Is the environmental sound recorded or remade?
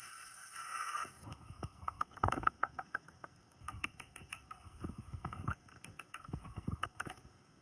remade